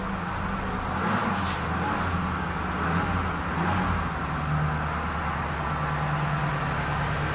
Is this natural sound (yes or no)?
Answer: yes